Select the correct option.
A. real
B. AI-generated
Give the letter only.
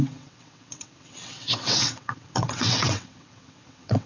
B